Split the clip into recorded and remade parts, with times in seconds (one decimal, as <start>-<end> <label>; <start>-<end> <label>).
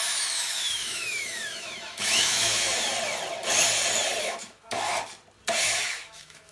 0.0-2.9 remade; 2.9-4.2 recorded; 4.2-4.9 remade; 4.9-5.6 recorded; 5.6-6.5 remade